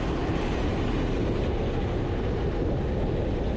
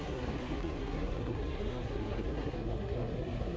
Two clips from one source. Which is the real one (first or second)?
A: first